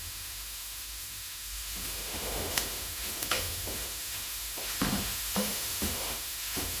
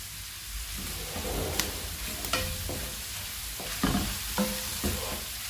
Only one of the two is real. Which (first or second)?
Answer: second